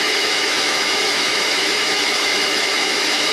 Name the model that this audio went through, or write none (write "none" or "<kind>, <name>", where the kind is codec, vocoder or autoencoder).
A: autoencoder, DAC-VAE